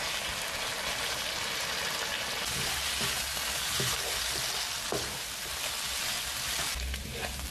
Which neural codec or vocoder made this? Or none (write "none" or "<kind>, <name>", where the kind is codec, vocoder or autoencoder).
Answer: none